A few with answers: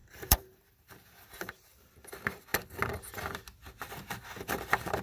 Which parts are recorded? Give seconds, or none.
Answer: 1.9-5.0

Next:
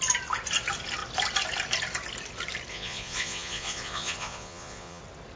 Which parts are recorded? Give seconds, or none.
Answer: 0.0-2.7; 5.0-5.4

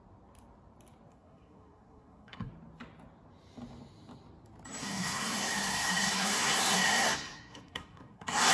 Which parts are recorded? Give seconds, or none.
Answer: 0.0-1.1; 2.5-4.8

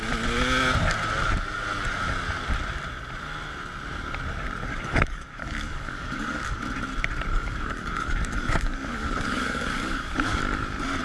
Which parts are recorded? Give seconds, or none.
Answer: 0.0-4.7; 6.6-7.3; 10.4-11.0

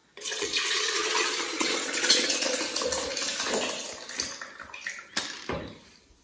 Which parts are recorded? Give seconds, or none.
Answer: 2.6-6.2

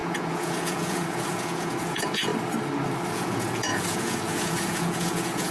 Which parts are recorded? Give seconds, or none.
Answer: 2.3-3.1

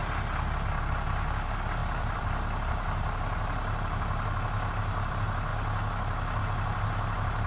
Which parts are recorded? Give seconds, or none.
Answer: 0.0-0.8; 5.5-6.4

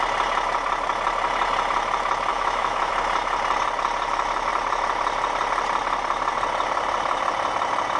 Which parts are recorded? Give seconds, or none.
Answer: 0.0-2.3; 2.9-8.0